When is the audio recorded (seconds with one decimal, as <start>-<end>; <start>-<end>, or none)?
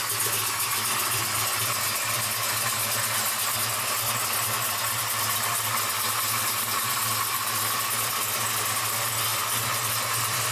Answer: 0.0-10.5